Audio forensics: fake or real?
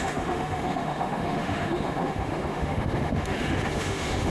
fake